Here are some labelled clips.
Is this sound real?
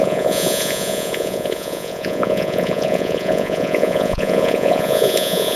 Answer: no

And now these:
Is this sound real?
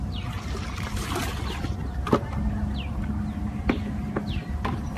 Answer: yes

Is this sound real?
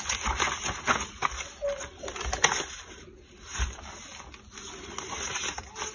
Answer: yes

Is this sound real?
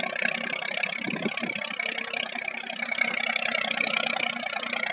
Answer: yes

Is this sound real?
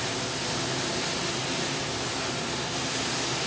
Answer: yes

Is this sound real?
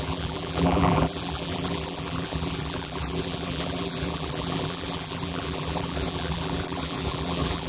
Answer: no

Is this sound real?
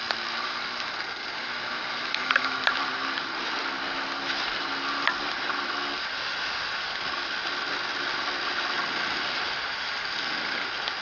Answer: yes